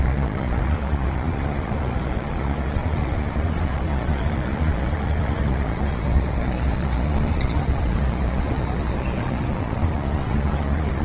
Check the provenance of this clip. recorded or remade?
remade